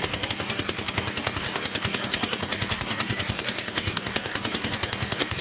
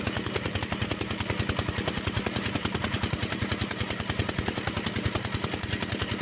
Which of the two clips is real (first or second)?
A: second